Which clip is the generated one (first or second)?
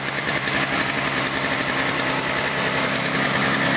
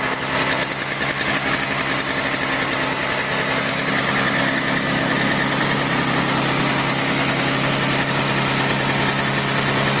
first